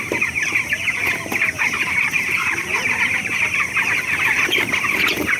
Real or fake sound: real